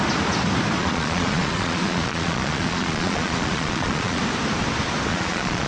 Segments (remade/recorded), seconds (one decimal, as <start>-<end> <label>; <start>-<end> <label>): 0.0-0.8 recorded; 0.8-4.2 remade; 4.2-5.1 recorded; 5.1-5.7 remade